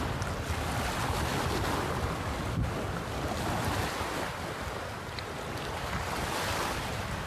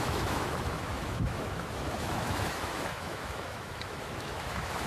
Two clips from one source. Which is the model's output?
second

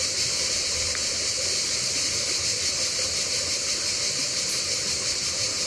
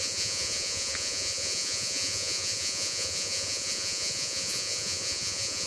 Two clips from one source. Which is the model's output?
second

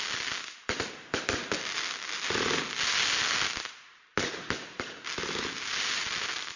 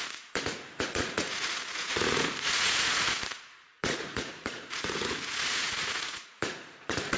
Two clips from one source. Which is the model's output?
second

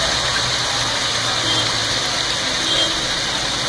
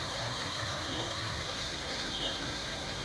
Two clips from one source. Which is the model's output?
second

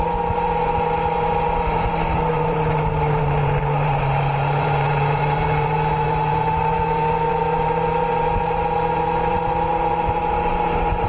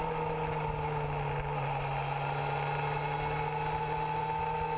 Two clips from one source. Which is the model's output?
first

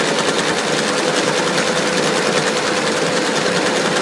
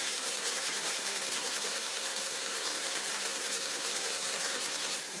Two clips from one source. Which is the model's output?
second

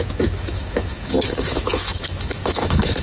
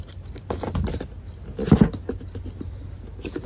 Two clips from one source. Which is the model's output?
first